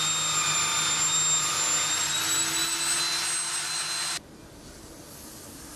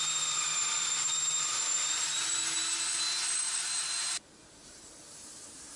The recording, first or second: first